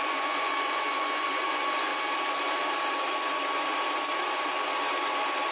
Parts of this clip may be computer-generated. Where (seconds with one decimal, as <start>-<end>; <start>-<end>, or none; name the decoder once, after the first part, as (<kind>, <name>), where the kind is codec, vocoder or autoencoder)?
0.0-1.9 (vocoder, Vocos)